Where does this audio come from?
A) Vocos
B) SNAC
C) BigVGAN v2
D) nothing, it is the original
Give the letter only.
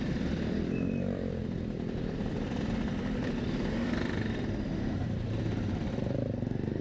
C